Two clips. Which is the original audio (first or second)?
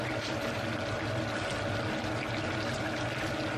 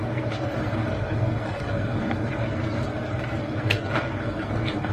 first